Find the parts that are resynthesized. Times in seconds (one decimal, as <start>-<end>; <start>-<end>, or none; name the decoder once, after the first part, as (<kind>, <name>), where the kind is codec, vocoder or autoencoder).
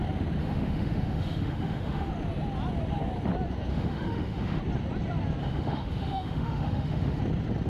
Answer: 0.4-2.1 (autoencoder, DAC-VAE); 3.7-4.6; 5.4-7.2